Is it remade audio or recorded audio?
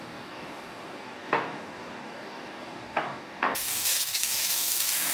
remade